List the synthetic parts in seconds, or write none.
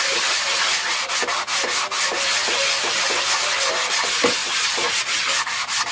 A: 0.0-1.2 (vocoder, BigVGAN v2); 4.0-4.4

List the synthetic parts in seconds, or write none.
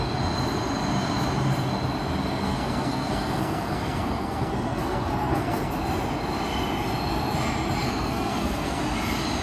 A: 2.2-5.7 (codec, SNAC); 7.8-8.8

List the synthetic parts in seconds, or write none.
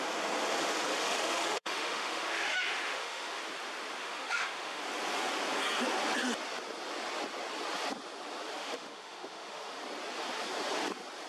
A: 0.9-3.4 (autoencoder, DAC-VAE); 4.0-4.8; 8.6-9.8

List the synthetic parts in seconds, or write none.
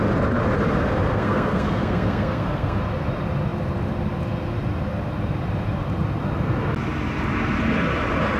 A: 1.1-2.8 (codec, SNAC)